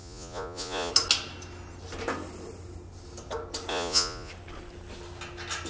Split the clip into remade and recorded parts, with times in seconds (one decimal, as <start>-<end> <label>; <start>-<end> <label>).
0.0-0.9 remade; 0.9-3.7 recorded; 3.7-4.3 remade; 4.3-5.7 recorded